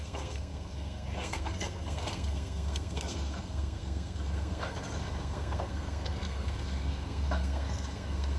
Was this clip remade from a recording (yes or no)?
yes